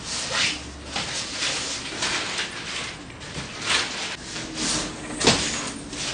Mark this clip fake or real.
real